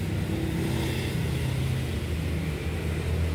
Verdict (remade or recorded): recorded